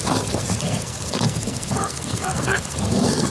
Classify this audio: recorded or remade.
remade